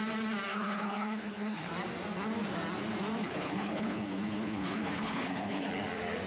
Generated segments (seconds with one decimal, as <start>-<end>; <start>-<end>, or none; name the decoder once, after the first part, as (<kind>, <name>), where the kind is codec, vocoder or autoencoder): 0.5-1.7 (codec, HILCodec); 3.2-5.7